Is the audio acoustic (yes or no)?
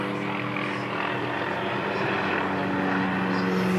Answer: yes